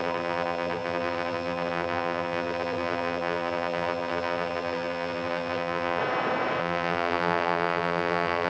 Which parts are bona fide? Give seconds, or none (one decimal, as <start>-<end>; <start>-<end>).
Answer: 6.0-6.6